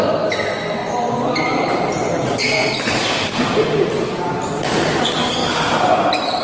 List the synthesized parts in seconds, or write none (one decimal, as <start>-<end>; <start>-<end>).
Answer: 0.8-4.2